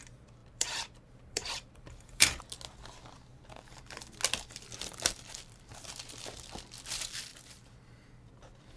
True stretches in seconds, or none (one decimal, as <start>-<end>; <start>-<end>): 0.0-0.4; 2.4-3.3; 3.8-8.8